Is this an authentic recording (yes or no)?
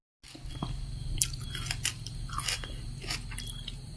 yes